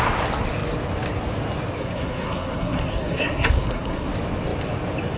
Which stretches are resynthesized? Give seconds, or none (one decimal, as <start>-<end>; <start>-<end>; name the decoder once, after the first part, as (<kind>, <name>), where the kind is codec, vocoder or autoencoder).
1.8-4.1 (codec, SNAC)